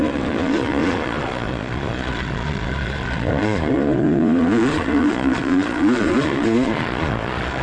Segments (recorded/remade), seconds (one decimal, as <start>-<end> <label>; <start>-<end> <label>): 0.0-7.6 remade